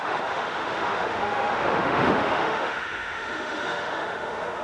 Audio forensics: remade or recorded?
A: remade